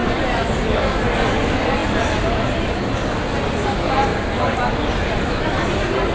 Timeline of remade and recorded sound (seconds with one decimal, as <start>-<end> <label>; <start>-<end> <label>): 0.0-6.1 recorded